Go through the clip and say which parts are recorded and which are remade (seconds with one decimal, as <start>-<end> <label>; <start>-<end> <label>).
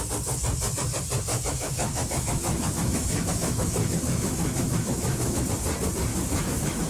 0.0-1.3 recorded; 1.3-5.4 remade; 5.4-6.1 recorded; 6.1-6.9 remade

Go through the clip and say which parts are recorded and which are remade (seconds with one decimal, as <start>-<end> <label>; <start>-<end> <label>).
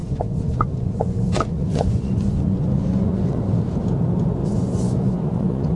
0.0-3.5 remade; 3.5-4.4 recorded; 4.4-5.8 remade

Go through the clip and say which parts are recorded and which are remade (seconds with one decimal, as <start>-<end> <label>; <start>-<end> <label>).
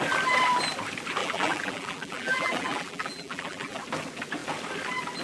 0.0-1.2 recorded; 1.2-3.8 remade; 3.8-5.2 recorded